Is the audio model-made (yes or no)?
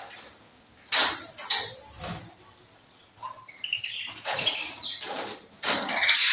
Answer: no